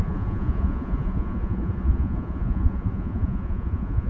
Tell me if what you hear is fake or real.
fake